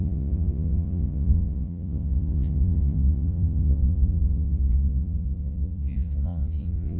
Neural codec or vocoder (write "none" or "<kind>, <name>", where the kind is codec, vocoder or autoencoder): vocoder, Vocos